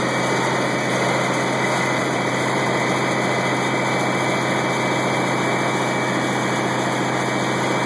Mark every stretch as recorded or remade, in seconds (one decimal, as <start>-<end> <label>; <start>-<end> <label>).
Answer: 0.0-2.0 recorded; 2.0-2.6 remade; 2.6-7.9 recorded